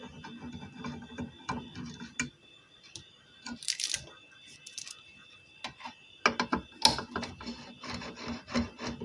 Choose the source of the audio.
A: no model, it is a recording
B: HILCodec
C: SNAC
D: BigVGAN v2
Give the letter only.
A